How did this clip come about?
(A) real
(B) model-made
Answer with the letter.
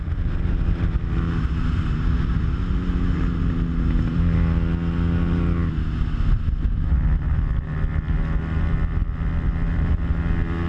A